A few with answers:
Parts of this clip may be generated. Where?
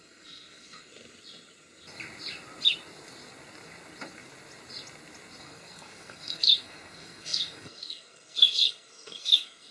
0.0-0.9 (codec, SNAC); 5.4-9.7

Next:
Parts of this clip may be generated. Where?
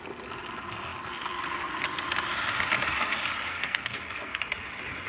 3.5-4.4 (codec, SNAC)